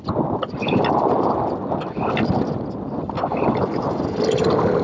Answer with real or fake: real